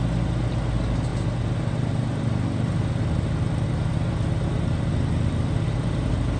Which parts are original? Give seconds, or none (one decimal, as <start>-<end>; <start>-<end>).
0.0-6.4